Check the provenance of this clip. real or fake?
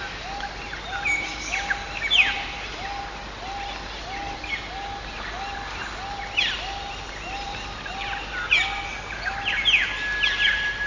real